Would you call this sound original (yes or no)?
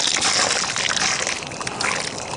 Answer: yes